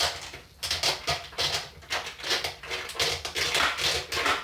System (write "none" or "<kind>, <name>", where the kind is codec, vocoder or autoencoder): none